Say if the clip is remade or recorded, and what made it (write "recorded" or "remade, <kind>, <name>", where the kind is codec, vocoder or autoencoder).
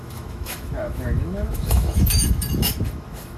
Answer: remade, autoencoder, DAC-VAE